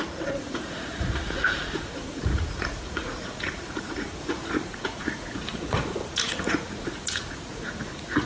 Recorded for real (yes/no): no